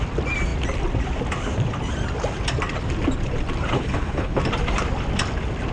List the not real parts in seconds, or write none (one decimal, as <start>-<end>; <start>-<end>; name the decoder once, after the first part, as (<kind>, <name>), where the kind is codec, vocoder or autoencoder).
3.7-4.4 (codec, HILCodec)